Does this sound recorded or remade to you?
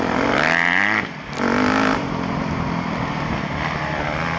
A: recorded